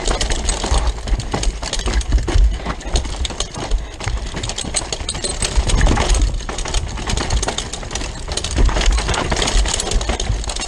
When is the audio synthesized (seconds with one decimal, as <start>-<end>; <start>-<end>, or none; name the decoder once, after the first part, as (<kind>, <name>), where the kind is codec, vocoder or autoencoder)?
5.3-5.8 (vocoder, BigVGAN v2)